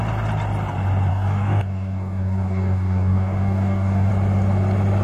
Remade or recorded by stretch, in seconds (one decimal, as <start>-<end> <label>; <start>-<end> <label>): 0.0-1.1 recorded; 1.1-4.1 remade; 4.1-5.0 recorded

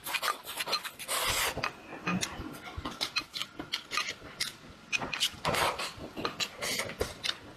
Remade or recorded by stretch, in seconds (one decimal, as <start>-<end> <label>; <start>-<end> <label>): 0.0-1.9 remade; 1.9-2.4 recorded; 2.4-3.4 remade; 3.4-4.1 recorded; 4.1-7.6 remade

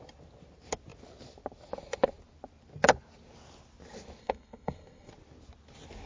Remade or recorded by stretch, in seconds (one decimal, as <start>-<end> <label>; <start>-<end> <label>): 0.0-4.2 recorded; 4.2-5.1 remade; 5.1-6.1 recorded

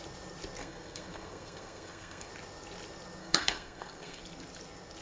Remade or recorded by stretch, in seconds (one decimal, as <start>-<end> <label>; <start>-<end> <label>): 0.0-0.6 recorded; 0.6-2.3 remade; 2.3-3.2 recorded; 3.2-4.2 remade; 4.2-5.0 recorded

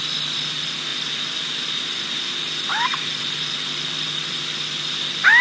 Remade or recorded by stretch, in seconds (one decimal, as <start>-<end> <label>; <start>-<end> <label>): 0.0-0.9 recorded; 0.9-4.1 remade; 4.1-5.4 recorded

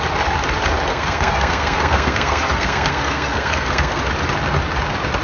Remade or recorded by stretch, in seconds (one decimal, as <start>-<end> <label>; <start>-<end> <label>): 0.0-0.9 recorded; 0.9-4.0 remade; 4.0-5.2 recorded